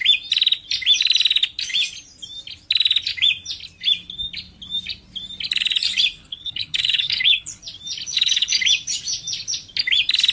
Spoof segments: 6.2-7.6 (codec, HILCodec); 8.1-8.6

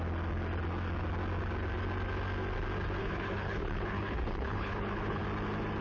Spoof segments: 3.0-5.2 (codec, HILCodec)

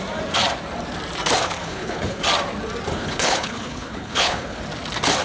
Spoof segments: 1.6-2.2 (codec, HILCodec); 2.9-4.6

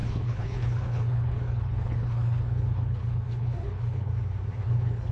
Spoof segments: 0.0-4.1 (codec, HILCodec); 4.6-5.1